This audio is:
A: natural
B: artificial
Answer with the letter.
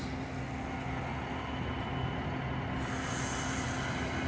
A